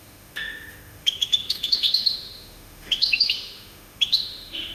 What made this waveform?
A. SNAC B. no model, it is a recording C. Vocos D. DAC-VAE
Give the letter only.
D